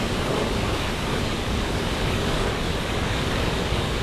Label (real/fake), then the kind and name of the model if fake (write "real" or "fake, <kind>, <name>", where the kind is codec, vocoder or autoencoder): fake, codec, DAC